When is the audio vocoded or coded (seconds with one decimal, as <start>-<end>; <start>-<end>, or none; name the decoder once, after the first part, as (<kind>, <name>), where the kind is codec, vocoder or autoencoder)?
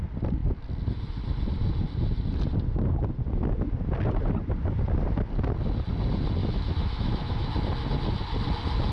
6.4-7.5 (autoencoder, DAC-VAE)